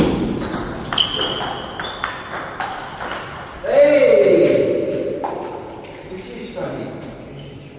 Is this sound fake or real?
real